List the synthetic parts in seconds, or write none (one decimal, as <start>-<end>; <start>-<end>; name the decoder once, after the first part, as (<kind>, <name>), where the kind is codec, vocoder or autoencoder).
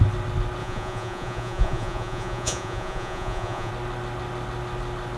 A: 0.6-3.7 (vocoder, Vocos)